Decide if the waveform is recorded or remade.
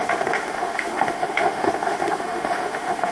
remade